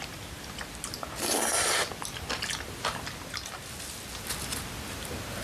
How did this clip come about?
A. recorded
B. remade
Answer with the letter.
A